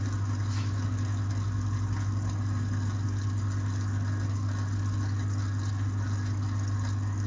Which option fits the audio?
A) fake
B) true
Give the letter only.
B